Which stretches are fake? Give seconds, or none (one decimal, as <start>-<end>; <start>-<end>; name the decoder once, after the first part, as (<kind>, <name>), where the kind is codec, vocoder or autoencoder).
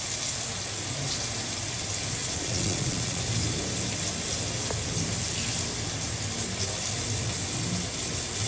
2.2-3.2 (vocoder, Vocos)